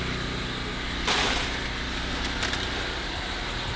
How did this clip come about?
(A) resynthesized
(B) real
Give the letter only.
B